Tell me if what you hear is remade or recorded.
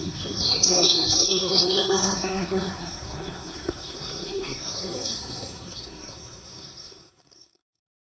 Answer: remade